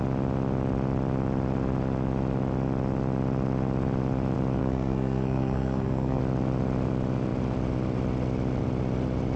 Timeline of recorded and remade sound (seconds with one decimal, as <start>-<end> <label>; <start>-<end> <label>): 0.0-4.6 recorded; 4.6-6.2 remade; 6.2-9.4 recorded